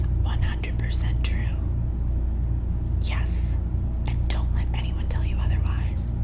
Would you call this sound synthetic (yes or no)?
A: no